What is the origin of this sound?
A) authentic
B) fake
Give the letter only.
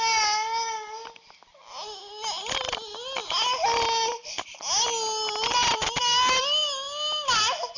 A